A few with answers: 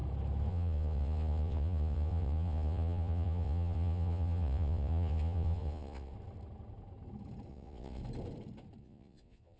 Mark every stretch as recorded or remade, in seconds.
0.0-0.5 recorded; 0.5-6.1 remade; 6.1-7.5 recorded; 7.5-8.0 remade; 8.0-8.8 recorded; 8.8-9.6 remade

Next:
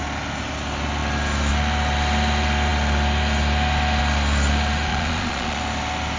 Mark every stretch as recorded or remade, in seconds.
0.0-4.9 recorded; 4.9-5.6 remade; 5.6-6.2 recorded

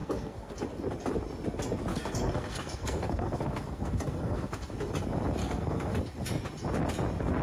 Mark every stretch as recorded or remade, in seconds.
0.0-0.6 remade; 0.6-1.9 recorded; 1.9-4.7 remade; 4.7-5.4 recorded; 5.4-6.0 remade; 6.0-7.4 recorded